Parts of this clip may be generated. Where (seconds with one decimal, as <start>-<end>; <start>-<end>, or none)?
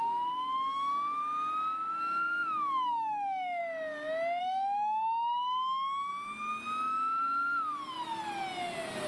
0.0-1.2; 1.9-3.6; 4.4-6.1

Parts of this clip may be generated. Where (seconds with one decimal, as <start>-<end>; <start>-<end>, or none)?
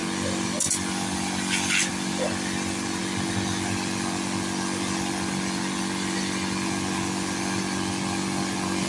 none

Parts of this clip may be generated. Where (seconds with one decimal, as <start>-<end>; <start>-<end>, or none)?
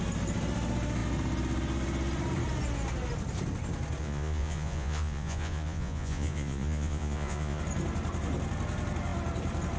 4.0-7.6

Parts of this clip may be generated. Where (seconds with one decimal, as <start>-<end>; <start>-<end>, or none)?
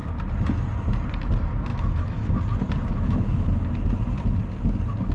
1.7-2.3; 2.9-3.5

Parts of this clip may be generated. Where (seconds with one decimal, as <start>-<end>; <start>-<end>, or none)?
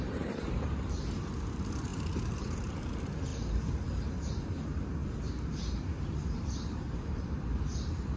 0.0-5.0; 5.5-8.2